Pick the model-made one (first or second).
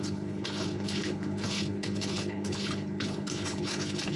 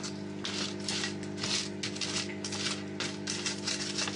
first